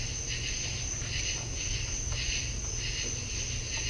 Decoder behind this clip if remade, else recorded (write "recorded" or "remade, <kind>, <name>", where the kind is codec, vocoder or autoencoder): recorded